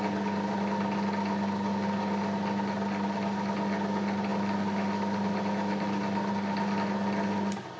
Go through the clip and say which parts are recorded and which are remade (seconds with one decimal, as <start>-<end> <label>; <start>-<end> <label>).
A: 0.0-7.8 recorded